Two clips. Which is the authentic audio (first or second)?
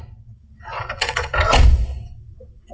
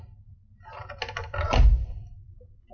second